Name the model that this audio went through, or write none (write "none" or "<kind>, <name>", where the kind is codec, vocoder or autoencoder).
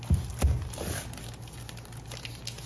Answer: none